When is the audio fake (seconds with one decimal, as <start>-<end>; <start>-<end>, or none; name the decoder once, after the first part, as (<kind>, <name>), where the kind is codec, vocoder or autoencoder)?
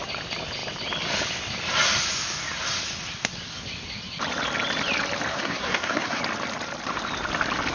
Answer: 5.3-6.2 (codec, SNAC)